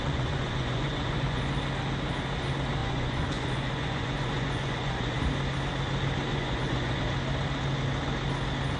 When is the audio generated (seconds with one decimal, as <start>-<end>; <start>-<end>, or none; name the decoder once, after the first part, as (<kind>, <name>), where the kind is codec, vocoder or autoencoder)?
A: 0.0-1.4 (vocoder, Vocos); 2.8-5.2; 6.3-7.0